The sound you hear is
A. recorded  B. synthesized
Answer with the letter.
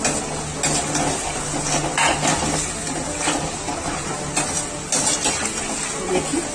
A